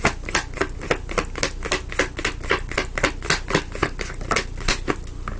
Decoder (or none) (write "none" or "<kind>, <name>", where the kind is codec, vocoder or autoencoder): none